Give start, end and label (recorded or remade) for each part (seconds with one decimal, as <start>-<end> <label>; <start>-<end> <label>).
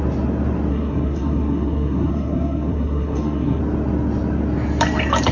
0.0-0.7 recorded; 0.7-3.6 remade; 3.6-5.3 recorded